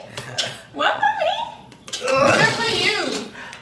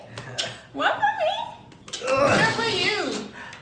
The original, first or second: second